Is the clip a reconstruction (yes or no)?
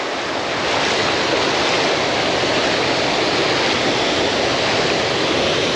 no